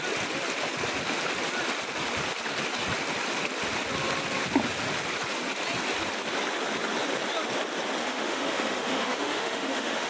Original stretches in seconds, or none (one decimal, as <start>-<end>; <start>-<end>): 0.0-8.0